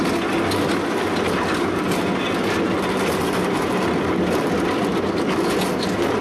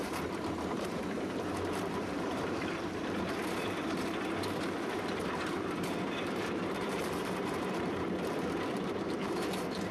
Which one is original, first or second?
first